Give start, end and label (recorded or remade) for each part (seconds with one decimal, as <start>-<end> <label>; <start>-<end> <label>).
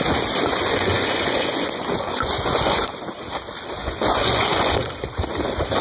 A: 0.0-0.5 recorded; 0.5-2.8 remade; 2.8-3.8 recorded; 3.8-5.0 remade; 5.0-5.8 recorded